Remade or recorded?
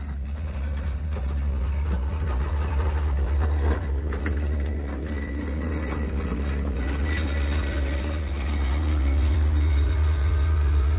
remade